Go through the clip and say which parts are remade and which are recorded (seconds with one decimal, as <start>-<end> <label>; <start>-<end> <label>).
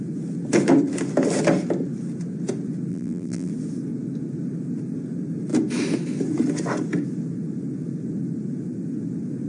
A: 0.0-2.9 recorded; 2.9-3.5 remade; 3.5-9.5 recorded